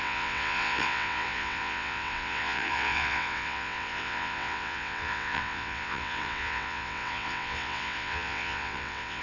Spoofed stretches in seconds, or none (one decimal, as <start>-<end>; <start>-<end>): 0.0-9.2

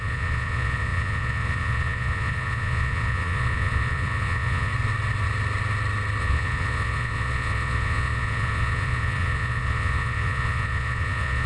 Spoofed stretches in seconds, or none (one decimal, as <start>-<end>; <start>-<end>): 0.0-4.7; 6.2-11.5

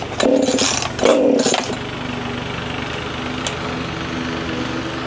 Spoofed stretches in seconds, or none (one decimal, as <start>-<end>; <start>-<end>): none